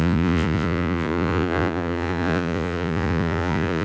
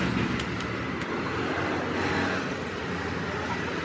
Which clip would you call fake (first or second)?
first